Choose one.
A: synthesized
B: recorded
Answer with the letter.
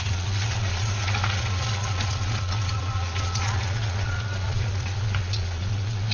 A